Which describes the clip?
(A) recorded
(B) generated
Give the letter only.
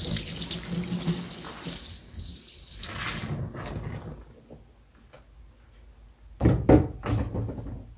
A